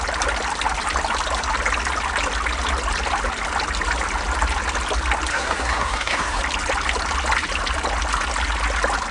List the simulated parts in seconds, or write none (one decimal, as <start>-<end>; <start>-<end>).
5.3-6.4

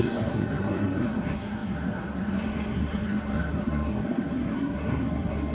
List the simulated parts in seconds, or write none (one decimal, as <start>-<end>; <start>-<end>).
0.0-5.5

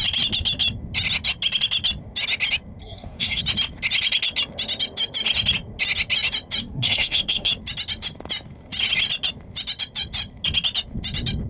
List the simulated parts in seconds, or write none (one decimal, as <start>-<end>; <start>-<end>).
2.8-3.4; 6.6-7.5

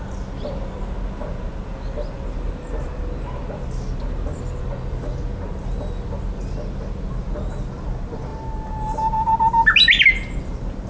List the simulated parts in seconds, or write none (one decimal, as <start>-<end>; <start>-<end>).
none

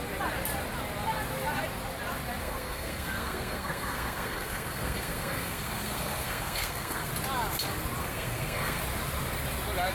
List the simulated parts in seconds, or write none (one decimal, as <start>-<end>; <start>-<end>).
2.4-7.1; 8.0-8.8

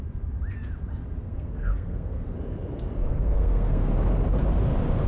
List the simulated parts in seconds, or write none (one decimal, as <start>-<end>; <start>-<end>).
1.2-2.3; 3.0-3.9